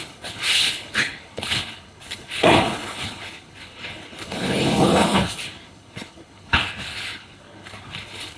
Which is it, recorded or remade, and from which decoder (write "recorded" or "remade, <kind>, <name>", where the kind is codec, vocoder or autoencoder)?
remade, codec, HILCodec